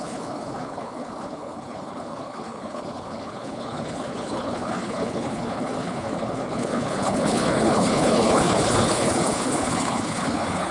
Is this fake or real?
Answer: fake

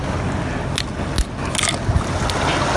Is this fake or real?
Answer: real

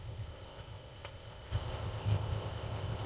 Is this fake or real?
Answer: fake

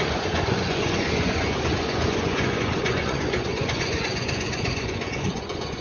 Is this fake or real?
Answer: fake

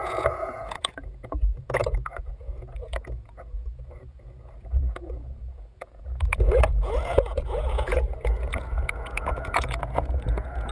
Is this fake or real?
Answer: fake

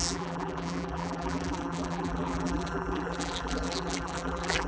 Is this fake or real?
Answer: fake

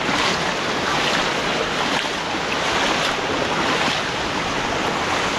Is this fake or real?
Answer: real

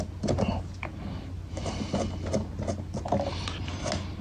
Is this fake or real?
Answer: real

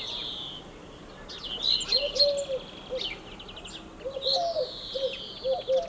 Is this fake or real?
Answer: real